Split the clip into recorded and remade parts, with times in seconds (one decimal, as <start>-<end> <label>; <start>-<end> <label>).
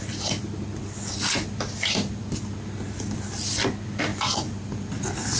0.0-5.4 recorded